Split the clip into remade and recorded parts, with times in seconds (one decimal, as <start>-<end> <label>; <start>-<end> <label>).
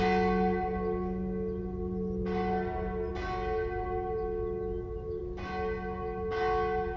0.0-7.0 recorded